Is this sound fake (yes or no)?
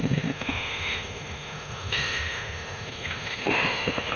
yes